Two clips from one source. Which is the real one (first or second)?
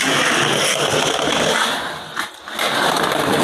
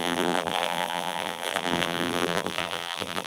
first